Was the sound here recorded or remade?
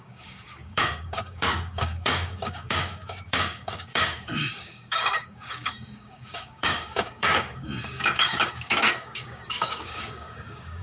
remade